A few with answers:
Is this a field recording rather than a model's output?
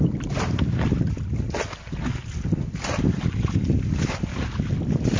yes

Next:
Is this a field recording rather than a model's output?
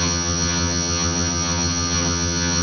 no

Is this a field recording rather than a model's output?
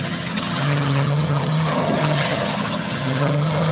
no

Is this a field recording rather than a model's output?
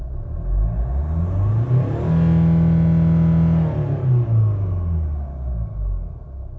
yes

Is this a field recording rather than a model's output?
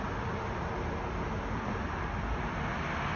yes